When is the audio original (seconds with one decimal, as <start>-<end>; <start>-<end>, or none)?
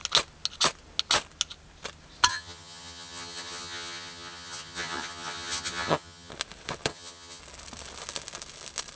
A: 0.0-2.3; 6.3-6.9; 7.4-9.0